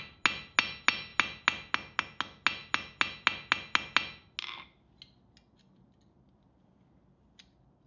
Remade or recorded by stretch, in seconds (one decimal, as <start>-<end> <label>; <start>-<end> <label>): 0.0-7.9 recorded